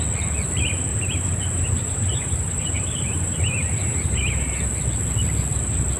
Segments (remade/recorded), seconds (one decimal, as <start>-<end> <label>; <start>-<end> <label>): 0.0-0.9 recorded; 0.9-4.5 remade; 4.5-6.0 recorded